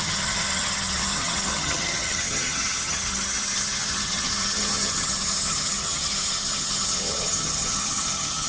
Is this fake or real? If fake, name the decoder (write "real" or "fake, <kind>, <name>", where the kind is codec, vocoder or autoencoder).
fake, vocoder, HiFi-GAN